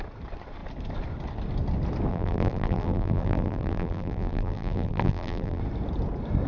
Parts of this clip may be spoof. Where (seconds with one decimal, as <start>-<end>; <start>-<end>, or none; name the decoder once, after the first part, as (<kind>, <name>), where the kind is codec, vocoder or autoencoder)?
2.1-5.6 (vocoder, BigVGAN v2)